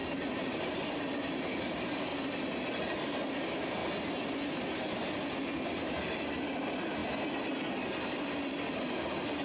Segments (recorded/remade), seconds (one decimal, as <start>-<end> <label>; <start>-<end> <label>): 0.0-0.5 remade; 0.5-9.4 recorded